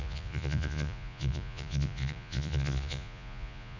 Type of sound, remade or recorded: remade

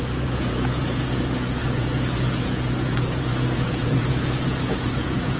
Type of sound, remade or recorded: remade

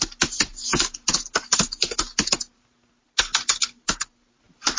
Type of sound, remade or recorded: recorded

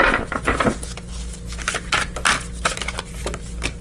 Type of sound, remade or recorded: recorded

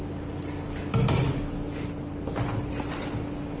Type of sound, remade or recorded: recorded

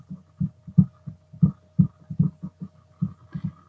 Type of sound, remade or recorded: recorded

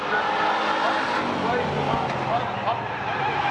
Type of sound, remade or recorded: recorded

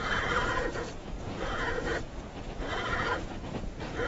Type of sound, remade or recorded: remade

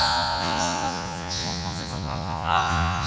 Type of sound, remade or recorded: remade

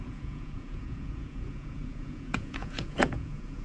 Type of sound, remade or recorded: remade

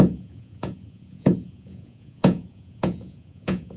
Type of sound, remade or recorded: remade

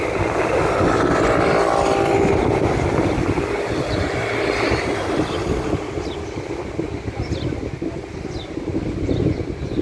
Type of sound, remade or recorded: recorded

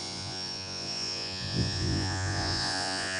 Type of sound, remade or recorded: remade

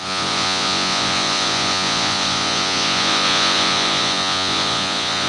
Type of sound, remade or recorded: remade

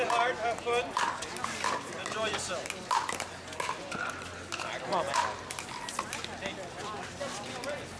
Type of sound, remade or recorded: recorded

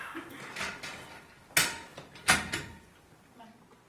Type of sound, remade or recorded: recorded